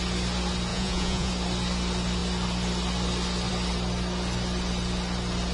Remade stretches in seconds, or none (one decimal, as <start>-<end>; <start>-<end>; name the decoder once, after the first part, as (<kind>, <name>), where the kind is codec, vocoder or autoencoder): 0.7-1.3 (vocoder, Vocos)